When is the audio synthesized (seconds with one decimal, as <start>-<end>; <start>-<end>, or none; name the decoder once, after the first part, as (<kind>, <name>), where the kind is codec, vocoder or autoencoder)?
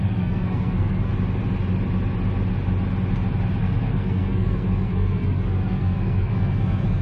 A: 0.0-1.1 (codec, SNAC); 3.6-7.0